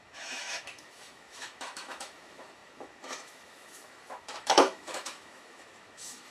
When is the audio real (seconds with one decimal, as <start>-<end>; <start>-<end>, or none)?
none

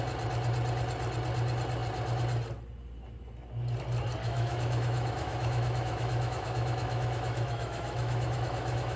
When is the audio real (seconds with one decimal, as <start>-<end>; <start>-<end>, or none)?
0.0-4.2

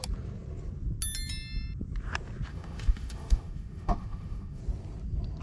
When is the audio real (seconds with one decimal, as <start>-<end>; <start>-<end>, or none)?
0.0-2.5; 4.6-5.4